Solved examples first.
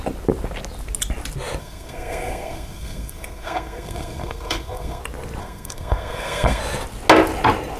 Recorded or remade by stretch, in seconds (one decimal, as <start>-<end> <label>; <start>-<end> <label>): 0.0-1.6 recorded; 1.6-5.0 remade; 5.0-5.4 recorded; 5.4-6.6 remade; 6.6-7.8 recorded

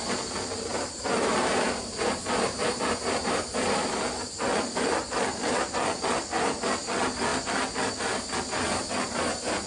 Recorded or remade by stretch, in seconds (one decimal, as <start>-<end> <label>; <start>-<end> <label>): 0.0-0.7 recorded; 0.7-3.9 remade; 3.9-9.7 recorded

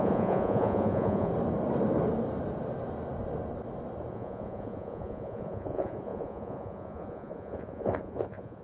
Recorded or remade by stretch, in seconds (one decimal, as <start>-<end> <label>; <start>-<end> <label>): 0.0-1.3 remade; 1.3-4.1 recorded; 4.1-8.6 remade

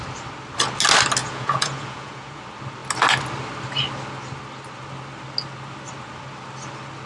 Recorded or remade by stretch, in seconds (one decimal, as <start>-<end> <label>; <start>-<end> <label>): 0.0-1.2 recorded; 1.2-2.4 remade; 2.4-7.1 recorded

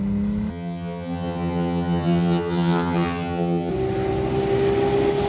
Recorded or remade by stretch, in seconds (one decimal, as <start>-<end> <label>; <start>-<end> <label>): 0.0-0.5 recorded; 0.5-3.7 remade; 3.7-5.3 recorded

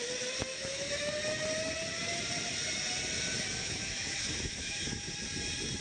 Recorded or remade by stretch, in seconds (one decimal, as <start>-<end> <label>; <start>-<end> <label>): 0.0-0.5 recorded; 0.5-1.1 remade; 1.1-3.6 recorded; 3.6-5.1 remade; 5.1-5.8 recorded

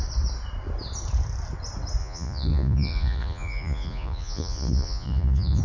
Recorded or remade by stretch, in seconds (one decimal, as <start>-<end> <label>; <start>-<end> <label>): 0.0-2.0 recorded; 2.0-5.6 remade